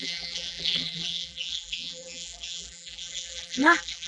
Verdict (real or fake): fake